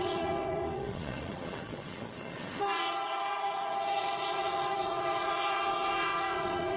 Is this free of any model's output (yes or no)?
no